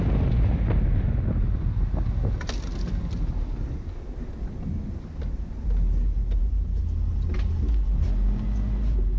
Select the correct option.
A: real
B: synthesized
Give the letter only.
A